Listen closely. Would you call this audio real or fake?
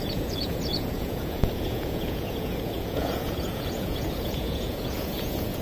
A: fake